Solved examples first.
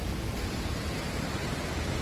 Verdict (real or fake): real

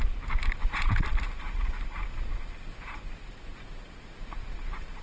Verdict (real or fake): real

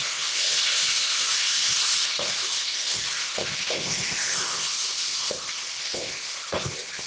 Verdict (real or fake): fake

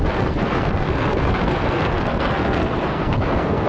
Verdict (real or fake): fake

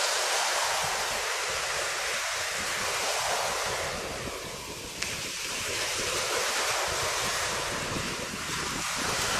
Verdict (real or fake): real